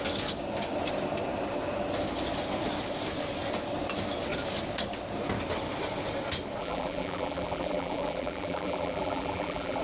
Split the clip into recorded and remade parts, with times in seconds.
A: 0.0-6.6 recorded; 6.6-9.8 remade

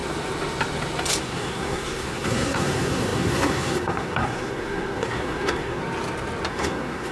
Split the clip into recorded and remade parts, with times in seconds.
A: 0.0-1.2 recorded; 1.2-5.8 remade; 5.8-6.5 recorded; 6.5-7.1 remade

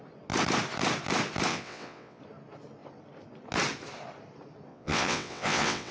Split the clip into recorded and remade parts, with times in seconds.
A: 0.0-1.5 recorded; 1.5-2.2 remade; 2.2-4.7 recorded; 4.7-5.9 remade

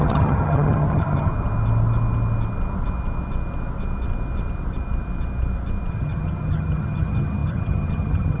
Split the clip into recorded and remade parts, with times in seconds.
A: 0.0-1.3 remade; 1.3-5.9 recorded; 5.9-8.4 remade